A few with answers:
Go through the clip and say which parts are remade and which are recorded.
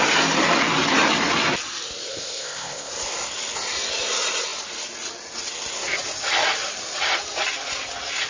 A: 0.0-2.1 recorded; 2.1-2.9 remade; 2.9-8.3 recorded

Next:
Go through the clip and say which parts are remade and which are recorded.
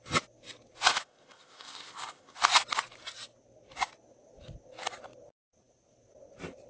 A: 0.0-0.9 recorded; 0.9-2.4 remade; 2.4-6.7 recorded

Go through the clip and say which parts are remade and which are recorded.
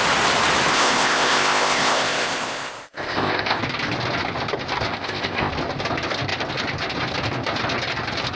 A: 0.0-0.7 recorded; 0.7-3.6 remade; 3.6-4.9 recorded; 4.9-5.5 remade; 5.5-8.4 recorded